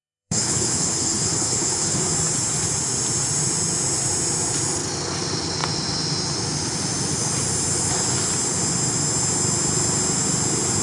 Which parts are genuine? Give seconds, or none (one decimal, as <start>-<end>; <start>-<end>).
2.0-10.8